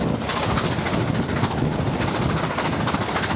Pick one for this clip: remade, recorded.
recorded